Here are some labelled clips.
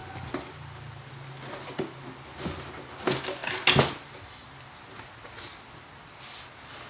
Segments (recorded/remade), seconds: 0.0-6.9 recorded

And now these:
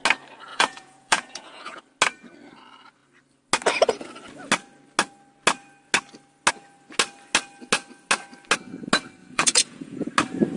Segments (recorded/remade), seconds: 0.0-0.5 recorded; 0.5-1.8 remade; 1.8-9.2 recorded; 9.2-10.1 remade; 10.1-10.6 recorded

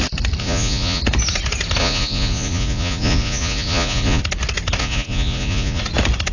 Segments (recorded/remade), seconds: 0.0-0.4 recorded; 0.4-1.0 remade; 1.0-1.8 recorded; 1.8-4.2 remade; 4.2-4.8 recorded; 4.8-5.8 remade; 5.8-6.3 recorded

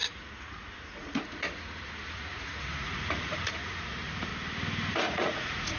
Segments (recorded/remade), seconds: 0.0-4.3 remade; 4.3-4.9 recorded; 4.9-5.8 remade